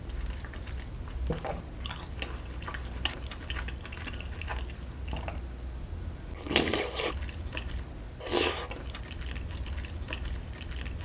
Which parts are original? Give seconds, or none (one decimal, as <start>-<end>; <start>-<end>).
0.0-11.0